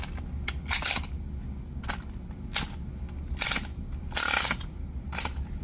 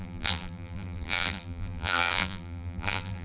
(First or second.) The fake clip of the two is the second